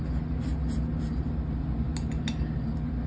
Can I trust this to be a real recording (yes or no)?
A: yes